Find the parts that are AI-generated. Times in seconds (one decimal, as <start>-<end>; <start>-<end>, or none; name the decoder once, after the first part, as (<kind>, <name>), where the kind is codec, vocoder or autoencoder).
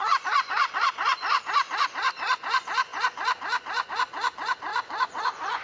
0.0-5.6 (vocoder, Vocos)